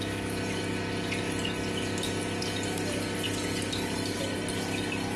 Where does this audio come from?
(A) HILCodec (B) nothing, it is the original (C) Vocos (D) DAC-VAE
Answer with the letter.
B